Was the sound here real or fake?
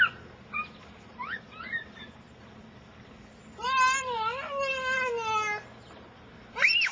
real